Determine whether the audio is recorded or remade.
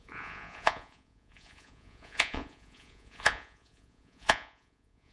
remade